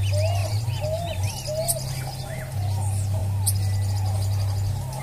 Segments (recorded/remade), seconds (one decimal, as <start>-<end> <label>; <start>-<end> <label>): 0.0-5.0 recorded